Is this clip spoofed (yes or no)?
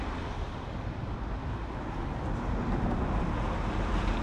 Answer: no